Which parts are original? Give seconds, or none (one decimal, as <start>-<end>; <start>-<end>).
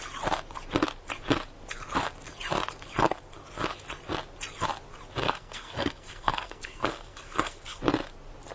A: 0.0-5.2; 7.8-8.5